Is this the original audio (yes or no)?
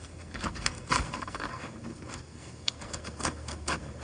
no